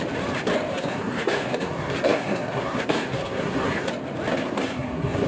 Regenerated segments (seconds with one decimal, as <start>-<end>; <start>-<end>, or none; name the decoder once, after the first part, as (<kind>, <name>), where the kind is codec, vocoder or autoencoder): 0.7-3.9 (codec, SNAC); 4.3-5.3